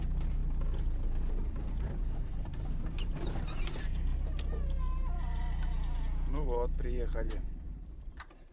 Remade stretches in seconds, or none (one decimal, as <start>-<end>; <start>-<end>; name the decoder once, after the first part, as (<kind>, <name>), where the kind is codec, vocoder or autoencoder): 0.0-0.4 (vocoder, BigVGAN v2); 1.3-4.1; 7.4-8.5